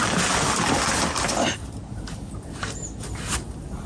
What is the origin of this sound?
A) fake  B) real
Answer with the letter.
B